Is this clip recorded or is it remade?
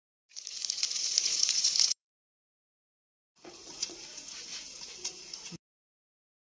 remade